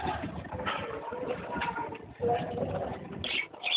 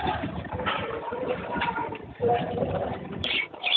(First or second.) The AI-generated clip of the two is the second